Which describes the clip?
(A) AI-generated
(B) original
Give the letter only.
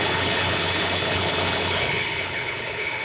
A